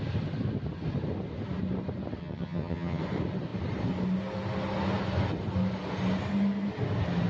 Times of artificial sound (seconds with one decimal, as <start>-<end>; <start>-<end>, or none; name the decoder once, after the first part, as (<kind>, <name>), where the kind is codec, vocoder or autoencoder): 2.2-3.0 (vocoder, HiFi-GAN)